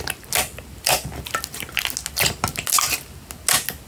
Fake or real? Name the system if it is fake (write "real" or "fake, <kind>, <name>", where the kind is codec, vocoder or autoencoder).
real